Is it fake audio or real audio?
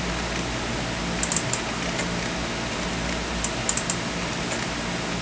real